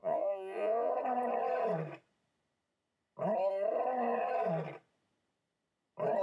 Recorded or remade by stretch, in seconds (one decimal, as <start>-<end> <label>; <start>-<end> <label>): 0.0-0.9 remade; 0.9-6.2 recorded